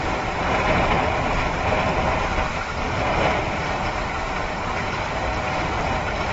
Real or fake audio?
real